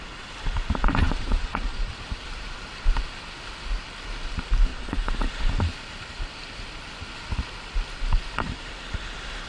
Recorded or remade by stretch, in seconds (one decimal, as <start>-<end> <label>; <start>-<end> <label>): 0.0-1.0 recorded; 1.0-1.9 remade; 1.9-4.7 recorded; 4.7-5.3 remade; 5.3-9.5 recorded